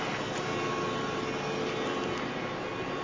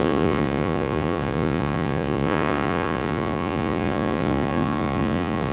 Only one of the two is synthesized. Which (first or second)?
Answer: second